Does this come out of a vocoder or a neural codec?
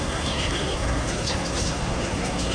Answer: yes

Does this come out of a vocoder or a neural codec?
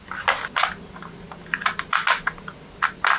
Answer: no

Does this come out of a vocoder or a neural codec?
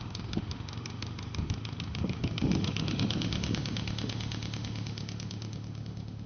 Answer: yes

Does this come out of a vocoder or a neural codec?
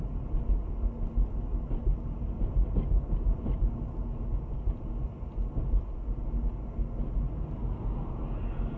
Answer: no